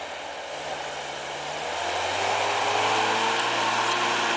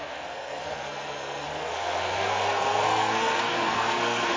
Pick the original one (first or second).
first